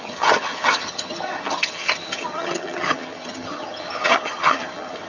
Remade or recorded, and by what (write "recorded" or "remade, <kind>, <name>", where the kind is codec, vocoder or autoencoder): remade, vocoder, HiFi-GAN